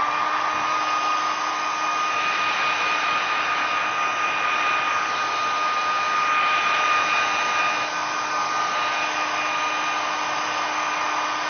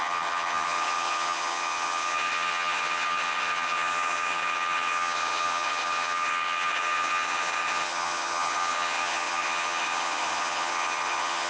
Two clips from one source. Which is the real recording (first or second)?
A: first